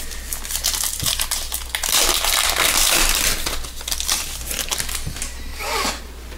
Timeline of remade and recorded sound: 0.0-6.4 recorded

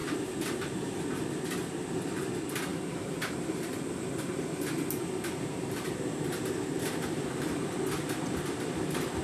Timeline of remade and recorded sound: 0.0-1.0 remade; 1.0-2.7 recorded; 2.7-7.7 remade; 7.7-9.2 recorded

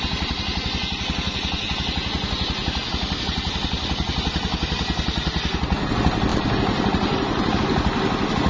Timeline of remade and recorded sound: 0.0-6.3 recorded; 6.3-7.6 remade; 7.6-8.5 recorded

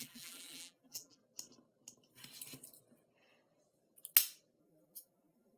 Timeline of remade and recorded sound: 0.0-1.2 remade; 1.2-4.6 recorded; 4.6-5.6 remade

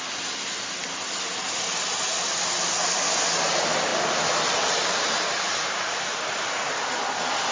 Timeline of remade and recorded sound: 0.0-7.5 recorded

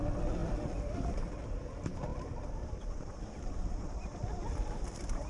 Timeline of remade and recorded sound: 0.0-2.1 recorded; 2.1-5.3 remade

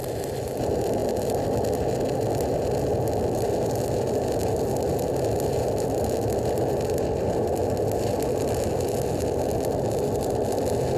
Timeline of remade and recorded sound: 0.0-1.0 remade; 1.0-5.6 recorded; 5.6-7.6 remade; 7.6-10.0 recorded; 10.0-11.0 remade